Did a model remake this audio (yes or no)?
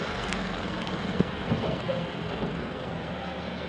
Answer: yes